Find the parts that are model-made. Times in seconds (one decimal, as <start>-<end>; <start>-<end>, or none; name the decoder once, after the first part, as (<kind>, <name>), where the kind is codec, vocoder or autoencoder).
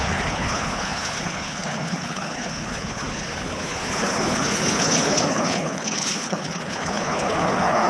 0.0-7.9 (codec, HILCodec)